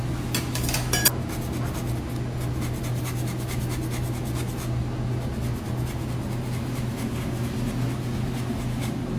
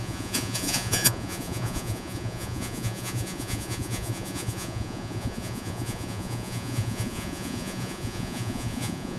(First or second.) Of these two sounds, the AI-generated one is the second